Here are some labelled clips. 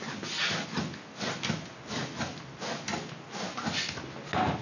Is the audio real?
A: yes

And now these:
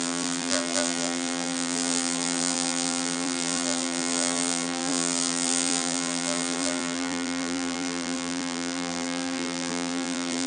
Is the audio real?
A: no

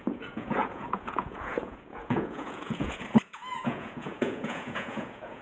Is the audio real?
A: no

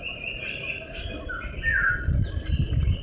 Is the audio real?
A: yes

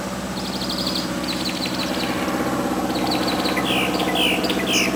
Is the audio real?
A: yes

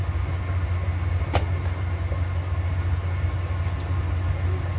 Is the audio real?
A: yes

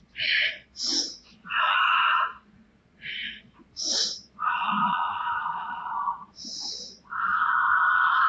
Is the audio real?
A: no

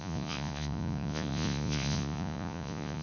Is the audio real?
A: no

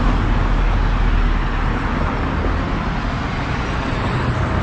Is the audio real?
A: yes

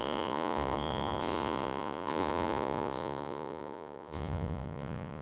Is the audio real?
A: no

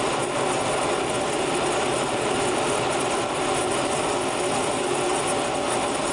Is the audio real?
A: yes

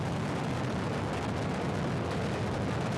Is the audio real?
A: yes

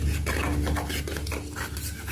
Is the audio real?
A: yes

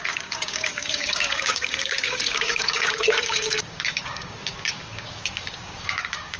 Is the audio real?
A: no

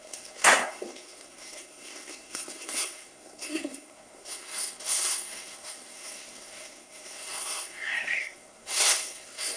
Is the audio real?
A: no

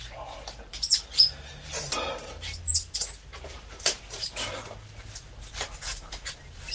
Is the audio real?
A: no